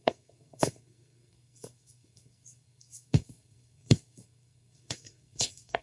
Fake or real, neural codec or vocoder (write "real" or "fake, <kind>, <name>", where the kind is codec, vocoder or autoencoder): fake, codec, SNAC